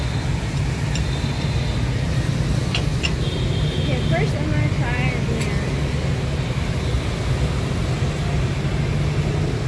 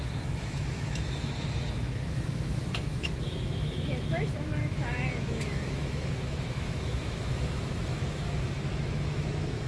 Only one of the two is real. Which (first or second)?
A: first